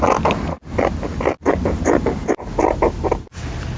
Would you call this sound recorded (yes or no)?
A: yes